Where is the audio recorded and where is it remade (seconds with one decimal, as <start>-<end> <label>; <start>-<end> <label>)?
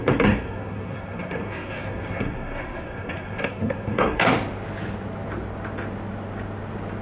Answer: 0.0-4.2 remade; 4.2-7.0 recorded